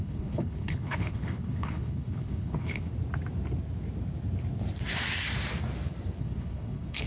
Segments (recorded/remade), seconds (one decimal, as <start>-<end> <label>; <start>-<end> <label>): 0.0-2.9 remade; 2.9-6.2 recorded; 6.2-7.1 remade